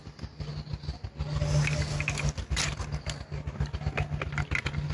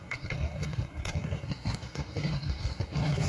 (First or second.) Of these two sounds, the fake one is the second